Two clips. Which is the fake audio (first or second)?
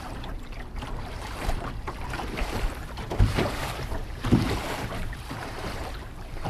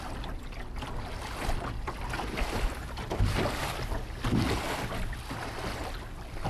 first